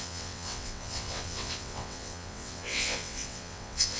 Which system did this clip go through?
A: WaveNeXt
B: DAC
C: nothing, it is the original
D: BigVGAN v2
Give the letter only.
A